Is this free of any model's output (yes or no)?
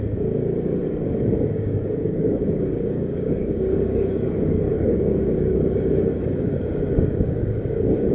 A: no